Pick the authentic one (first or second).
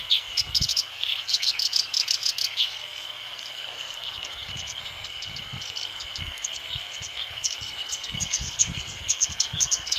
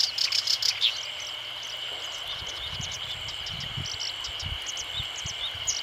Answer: second